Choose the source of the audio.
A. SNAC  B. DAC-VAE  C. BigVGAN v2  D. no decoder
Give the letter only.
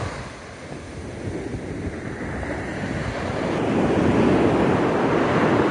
D